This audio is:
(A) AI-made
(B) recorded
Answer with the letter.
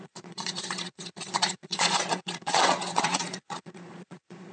A